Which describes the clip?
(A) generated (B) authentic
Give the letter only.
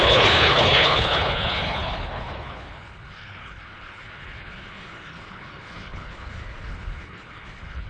A